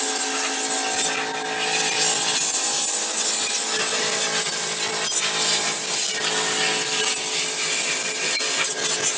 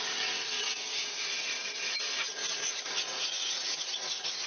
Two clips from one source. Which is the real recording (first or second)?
first